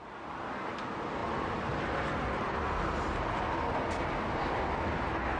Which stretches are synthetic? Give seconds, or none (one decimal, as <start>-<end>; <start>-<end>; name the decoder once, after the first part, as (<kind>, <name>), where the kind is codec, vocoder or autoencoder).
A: 0.0-0.7 (vocoder, BigVGAN v2)